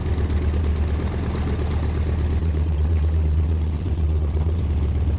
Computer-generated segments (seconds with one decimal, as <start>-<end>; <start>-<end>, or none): 2.4-4.6